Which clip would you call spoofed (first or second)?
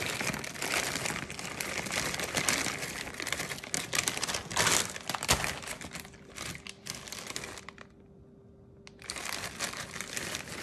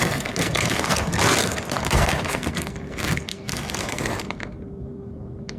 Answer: second